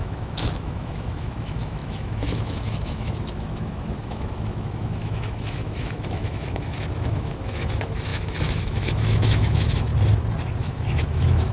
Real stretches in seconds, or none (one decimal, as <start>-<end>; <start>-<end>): 9.9-10.6